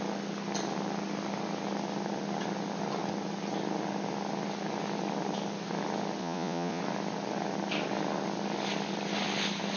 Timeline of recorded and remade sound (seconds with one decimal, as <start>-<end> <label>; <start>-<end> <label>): 0.0-6.2 recorded; 6.2-6.8 remade; 6.8-9.8 recorded